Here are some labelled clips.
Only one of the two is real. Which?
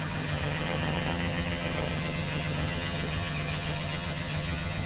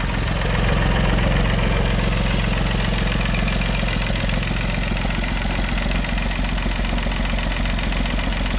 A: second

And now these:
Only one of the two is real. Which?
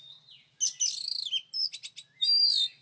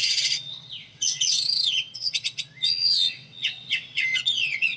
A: first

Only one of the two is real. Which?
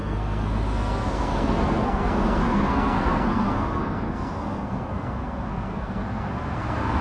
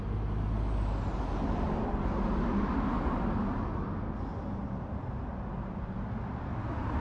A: second